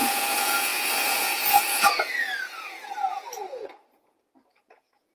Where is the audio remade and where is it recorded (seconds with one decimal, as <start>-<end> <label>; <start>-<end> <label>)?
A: 0.0-5.1 remade